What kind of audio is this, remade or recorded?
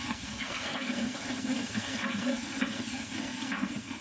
remade